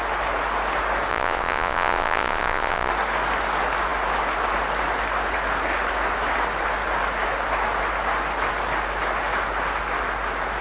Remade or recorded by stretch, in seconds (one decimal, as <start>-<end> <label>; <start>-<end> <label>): 0.0-1.1 recorded; 1.1-2.9 remade; 2.9-10.6 recorded

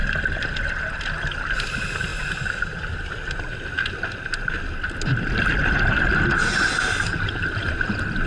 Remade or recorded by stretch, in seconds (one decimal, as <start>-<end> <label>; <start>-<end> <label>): 0.0-8.3 recorded

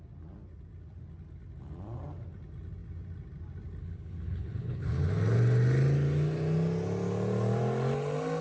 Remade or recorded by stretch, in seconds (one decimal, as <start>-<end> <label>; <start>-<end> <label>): 0.0-3.8 recorded; 3.8-5.1 remade; 5.1-8.4 recorded

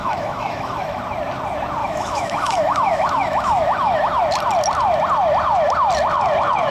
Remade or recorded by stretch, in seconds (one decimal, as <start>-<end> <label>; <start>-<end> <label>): 0.0-1.0 remade; 1.0-1.8 recorded; 1.8-4.2 remade; 4.2-6.7 recorded